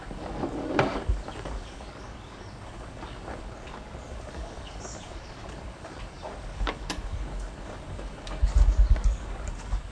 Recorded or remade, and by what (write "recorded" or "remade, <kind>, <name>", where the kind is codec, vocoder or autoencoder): remade, codec, DAC